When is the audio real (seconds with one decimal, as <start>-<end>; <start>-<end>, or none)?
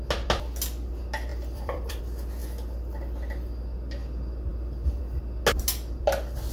0.0-1.3; 2.0-4.5; 5.0-6.5